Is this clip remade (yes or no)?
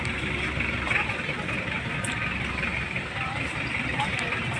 yes